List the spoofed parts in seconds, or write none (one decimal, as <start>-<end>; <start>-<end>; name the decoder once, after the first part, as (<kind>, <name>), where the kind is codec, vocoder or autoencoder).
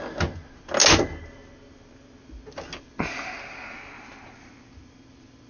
none